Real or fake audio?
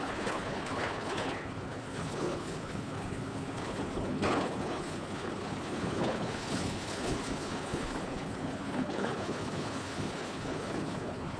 fake